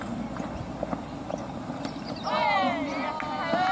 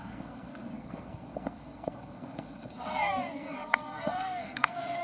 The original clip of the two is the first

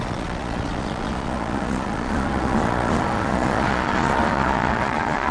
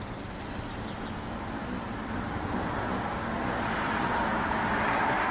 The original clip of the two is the second